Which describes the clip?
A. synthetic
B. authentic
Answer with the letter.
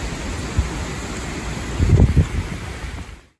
B